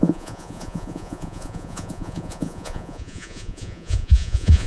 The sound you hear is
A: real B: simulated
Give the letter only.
B